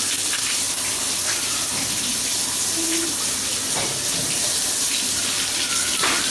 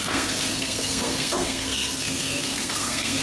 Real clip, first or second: first